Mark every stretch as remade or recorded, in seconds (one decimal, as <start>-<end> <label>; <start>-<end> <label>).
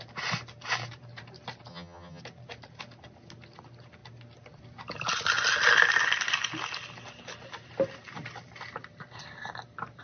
0.0-1.7 recorded; 1.7-2.2 remade; 2.2-10.0 recorded